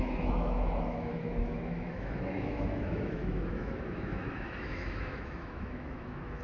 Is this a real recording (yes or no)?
no